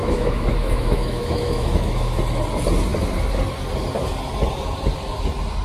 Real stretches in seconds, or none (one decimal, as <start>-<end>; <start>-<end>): 2.2-5.6